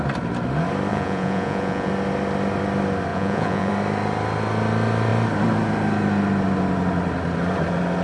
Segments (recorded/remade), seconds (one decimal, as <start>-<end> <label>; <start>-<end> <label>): 0.0-0.9 recorded; 0.9-1.9 remade; 1.9-3.1 recorded; 3.1-3.7 remade; 3.7-8.0 recorded